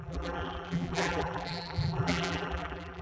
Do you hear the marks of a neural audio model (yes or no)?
yes